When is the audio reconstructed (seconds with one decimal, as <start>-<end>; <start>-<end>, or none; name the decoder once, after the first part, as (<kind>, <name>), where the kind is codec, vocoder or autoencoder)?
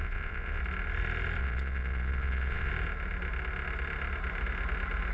0.0-0.6 (vocoder, Vocos); 1.4-2.7